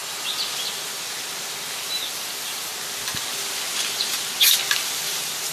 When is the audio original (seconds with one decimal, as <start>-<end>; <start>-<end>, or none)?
0.0-1.8; 2.7-4.7